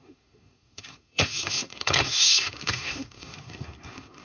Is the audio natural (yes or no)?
no